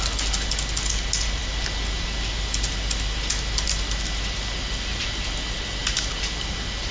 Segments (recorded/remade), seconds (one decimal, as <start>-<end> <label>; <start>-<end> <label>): 0.0-6.9 recorded